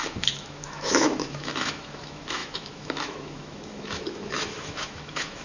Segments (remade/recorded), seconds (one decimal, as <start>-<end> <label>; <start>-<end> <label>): 0.0-5.4 remade